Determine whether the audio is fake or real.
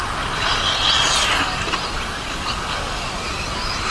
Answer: real